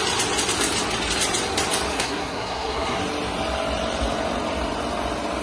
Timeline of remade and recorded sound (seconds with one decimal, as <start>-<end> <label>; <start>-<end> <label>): 0.0-1.9 recorded; 1.9-3.0 remade; 3.0-5.4 recorded